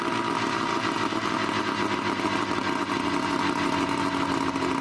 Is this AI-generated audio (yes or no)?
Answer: no